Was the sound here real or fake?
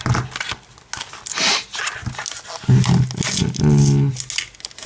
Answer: real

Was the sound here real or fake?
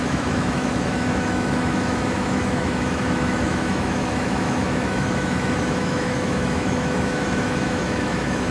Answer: fake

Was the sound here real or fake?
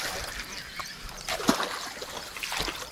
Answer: real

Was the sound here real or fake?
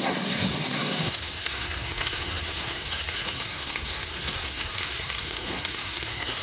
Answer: fake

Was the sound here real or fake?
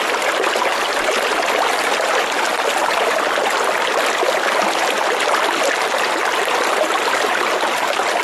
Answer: real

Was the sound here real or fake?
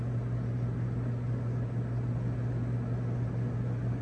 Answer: real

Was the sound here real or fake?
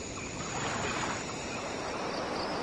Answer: real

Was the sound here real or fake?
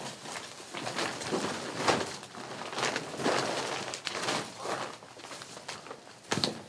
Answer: real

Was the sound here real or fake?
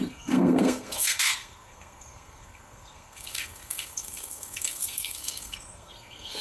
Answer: fake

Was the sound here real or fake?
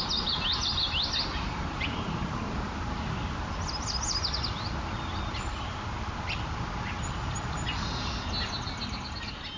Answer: real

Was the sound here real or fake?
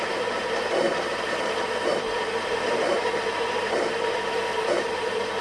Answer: fake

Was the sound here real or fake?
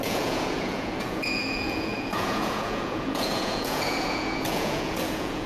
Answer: fake